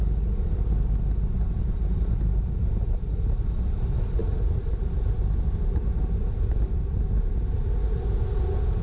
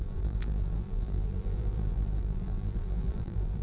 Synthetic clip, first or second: second